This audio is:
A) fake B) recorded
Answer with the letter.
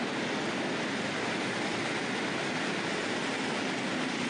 B